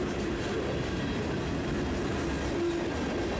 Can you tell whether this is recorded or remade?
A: recorded